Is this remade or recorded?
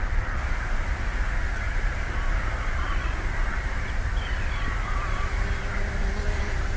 recorded